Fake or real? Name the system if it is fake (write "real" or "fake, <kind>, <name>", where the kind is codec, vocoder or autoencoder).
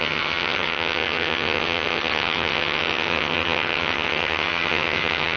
fake, vocoder, HiFi-GAN